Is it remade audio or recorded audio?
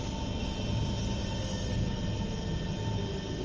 recorded